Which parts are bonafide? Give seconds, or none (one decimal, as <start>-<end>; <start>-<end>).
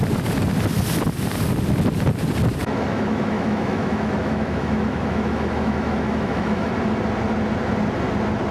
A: 0.0-2.6; 6.7-8.5